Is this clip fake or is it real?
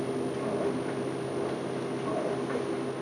real